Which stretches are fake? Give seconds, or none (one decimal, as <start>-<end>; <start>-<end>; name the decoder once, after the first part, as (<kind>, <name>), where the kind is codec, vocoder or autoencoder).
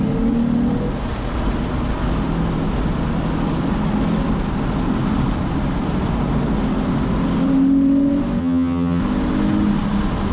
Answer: 8.4-9.0 (vocoder, HiFi-GAN)